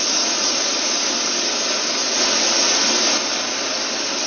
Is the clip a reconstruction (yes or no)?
no